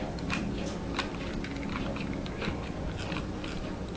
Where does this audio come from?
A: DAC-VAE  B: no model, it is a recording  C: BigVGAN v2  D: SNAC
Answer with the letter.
C